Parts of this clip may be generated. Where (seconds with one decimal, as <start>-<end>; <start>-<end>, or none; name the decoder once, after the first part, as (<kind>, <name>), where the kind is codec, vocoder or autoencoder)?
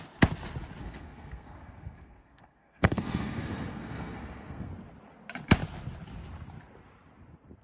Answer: 0.8-4.7 (codec, SNAC)